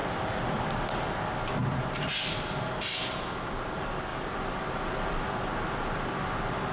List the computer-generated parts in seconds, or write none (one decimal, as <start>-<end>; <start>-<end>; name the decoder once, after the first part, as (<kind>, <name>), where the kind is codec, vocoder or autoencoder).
0.0-1.1 (vocoder, BigVGAN v2); 4.1-5.5